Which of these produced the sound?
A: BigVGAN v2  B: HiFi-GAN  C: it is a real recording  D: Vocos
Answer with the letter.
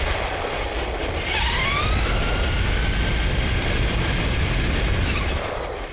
C